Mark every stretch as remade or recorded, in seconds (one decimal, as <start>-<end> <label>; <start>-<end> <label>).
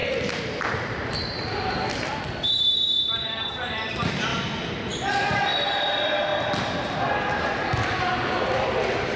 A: 0.0-4.3 remade; 4.3-5.1 recorded; 5.1-6.3 remade; 6.3-8.0 recorded; 8.0-9.2 remade